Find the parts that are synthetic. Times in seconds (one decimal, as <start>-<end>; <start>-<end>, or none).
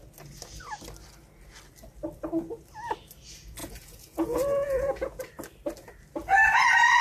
3.6-5.2